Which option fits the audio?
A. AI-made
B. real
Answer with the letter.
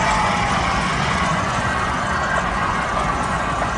A